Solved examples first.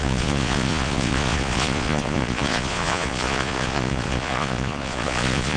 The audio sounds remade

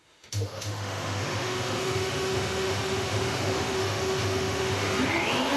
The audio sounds remade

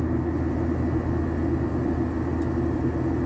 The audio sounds recorded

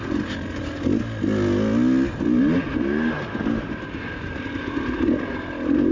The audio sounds recorded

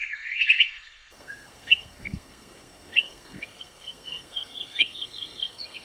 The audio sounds remade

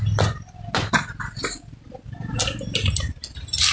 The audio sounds recorded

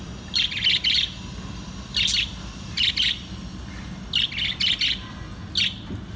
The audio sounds recorded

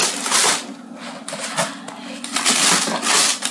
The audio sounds recorded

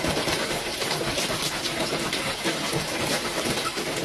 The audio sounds recorded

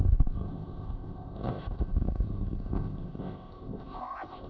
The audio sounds remade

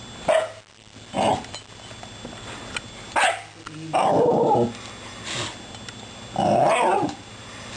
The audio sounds recorded